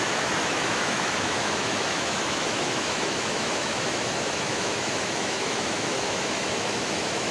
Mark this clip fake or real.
fake